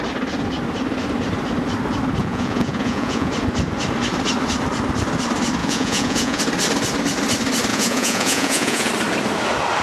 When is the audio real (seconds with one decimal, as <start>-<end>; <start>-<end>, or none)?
0.0-2.2; 3.3-5.6; 6.4-7.7; 8.9-9.8